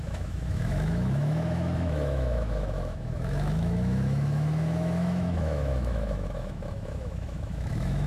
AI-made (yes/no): yes